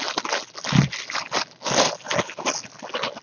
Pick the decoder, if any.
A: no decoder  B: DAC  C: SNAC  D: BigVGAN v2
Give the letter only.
A